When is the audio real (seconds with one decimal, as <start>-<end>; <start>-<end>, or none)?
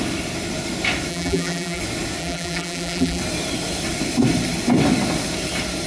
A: 0.0-1.1; 1.8-2.2; 3.2-5.9